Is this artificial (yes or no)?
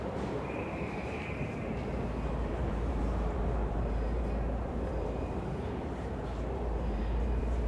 yes